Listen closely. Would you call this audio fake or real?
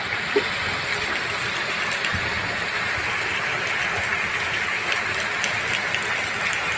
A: real